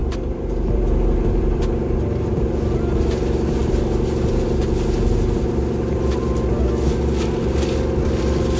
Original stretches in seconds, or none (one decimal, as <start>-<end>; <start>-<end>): 2.9-8.6

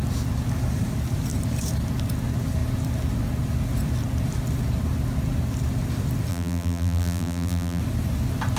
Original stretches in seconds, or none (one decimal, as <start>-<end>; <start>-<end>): 0.0-6.3; 7.8-8.6

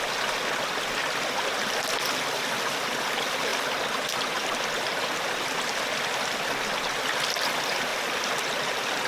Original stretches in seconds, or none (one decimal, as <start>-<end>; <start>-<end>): 0.0-3.5; 4.2-9.1

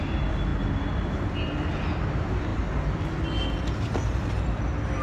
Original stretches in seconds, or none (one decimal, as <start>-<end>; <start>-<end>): 0.0-5.0

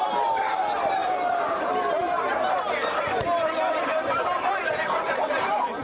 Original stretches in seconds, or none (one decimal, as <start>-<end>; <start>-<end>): 1.0-4.5